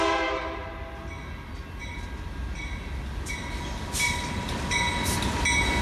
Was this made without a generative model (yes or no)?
yes